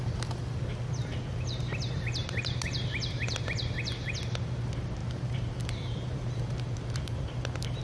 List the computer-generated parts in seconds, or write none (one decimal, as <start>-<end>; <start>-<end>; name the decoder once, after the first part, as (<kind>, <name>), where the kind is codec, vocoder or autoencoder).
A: 1.0-3.2 (vocoder, BigVGAN v2); 5.0-7.8